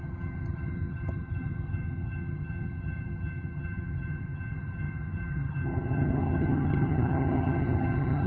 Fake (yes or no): yes